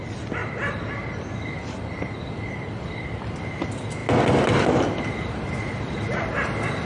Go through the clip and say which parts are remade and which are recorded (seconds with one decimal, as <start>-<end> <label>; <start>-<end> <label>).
0.0-0.4 remade; 0.4-2.9 recorded; 2.9-4.0 remade; 4.0-6.9 recorded